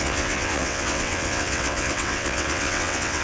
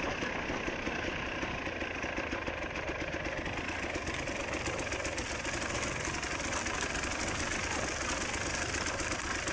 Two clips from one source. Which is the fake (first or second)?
first